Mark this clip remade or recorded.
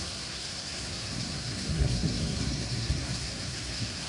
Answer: remade